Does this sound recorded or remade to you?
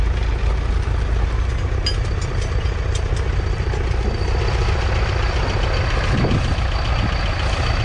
recorded